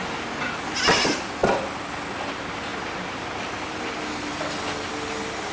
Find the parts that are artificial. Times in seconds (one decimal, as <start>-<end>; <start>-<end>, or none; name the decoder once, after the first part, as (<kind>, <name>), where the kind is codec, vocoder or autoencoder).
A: none